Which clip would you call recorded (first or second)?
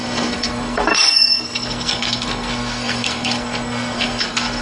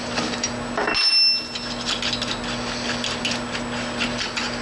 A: second